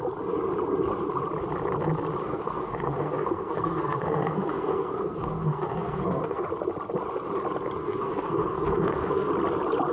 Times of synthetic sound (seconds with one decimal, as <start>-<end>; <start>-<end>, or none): 2.2-6.5; 7.8-9.3